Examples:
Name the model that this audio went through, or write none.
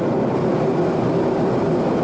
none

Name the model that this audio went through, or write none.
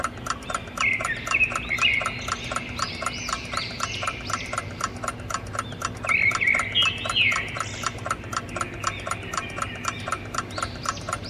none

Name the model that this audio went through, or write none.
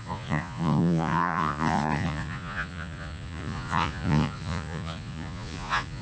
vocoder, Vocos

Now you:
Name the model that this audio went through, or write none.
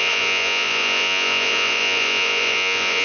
vocoder, Vocos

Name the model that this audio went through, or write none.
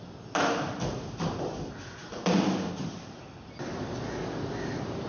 none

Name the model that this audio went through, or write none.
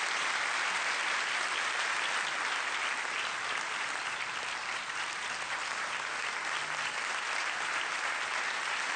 none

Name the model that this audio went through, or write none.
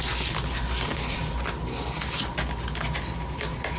none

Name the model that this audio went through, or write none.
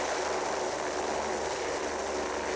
none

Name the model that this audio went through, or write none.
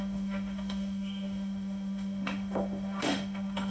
autoencoder, DAC-VAE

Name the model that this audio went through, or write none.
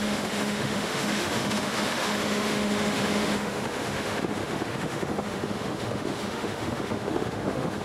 autoencoder, DAC-VAE